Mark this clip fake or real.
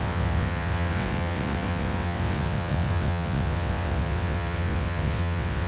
fake